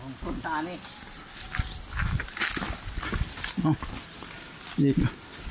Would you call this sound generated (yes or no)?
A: no